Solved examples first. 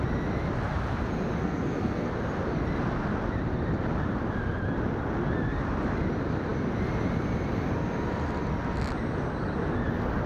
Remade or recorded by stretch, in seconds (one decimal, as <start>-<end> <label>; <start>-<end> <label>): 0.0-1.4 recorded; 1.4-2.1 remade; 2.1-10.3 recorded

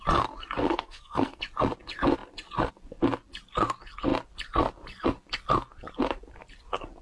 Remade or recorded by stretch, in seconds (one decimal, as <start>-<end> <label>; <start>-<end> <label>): 0.0-0.6 recorded; 0.6-1.4 remade; 1.4-7.0 recorded

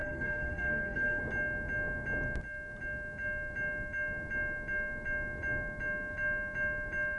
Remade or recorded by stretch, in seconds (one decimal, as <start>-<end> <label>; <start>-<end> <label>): 0.0-1.2 remade; 1.2-7.2 recorded